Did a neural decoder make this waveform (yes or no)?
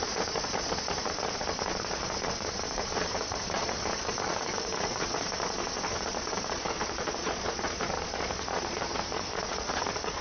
yes